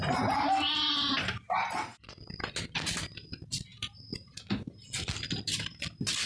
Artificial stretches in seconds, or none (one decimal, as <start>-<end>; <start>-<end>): none